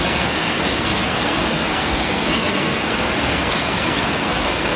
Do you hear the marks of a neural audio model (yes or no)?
yes